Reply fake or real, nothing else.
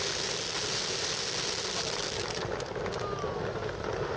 real